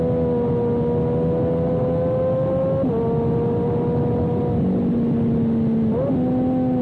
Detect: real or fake real